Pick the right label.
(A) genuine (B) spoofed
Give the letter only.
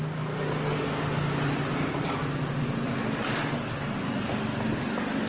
A